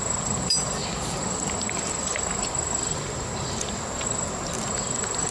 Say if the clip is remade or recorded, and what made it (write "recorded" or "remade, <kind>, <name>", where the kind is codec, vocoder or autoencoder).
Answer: remade, vocoder, BigVGAN v2